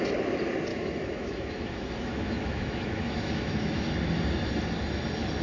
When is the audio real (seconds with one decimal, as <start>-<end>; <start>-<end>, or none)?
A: 0.0-0.7; 3.9-5.4